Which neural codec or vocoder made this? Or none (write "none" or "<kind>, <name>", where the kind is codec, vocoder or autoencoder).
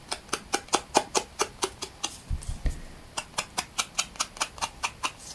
none